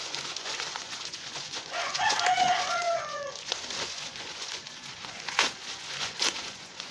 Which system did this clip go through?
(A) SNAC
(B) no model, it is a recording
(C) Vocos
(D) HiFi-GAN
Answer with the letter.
C